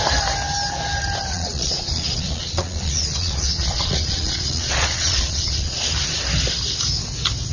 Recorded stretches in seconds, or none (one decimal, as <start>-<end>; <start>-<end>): 0.0-1.3; 5.8-7.5